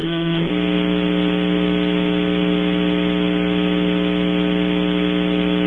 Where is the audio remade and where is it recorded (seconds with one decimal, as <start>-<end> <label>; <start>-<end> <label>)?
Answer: 0.0-0.5 remade; 0.5-5.7 recorded